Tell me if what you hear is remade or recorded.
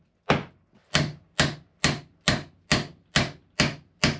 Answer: recorded